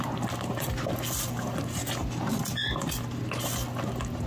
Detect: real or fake real